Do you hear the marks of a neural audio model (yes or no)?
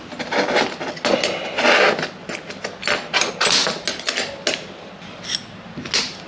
no